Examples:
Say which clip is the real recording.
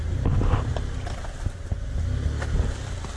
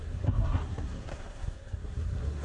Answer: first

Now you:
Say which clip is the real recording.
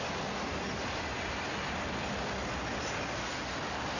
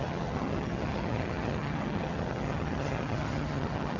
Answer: first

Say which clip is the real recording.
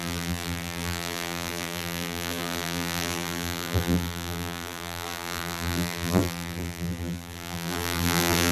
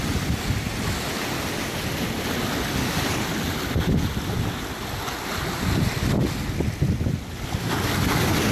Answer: second